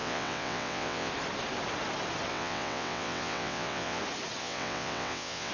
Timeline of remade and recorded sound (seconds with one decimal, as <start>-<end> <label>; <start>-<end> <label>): 0.0-1.1 remade; 1.1-2.3 recorded; 2.3-4.0 remade; 4.0-4.4 recorded; 4.4-5.5 remade